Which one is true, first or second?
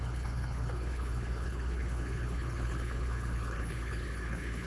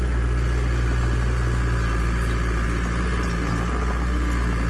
second